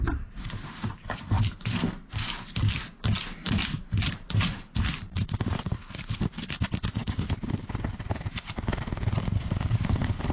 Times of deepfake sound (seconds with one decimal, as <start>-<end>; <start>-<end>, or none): 0.0-2.0; 4.0-10.3